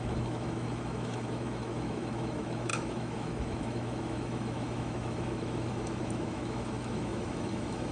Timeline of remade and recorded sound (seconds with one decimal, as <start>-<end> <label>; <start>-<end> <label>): 0.0-7.9 remade